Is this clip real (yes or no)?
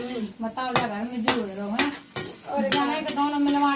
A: yes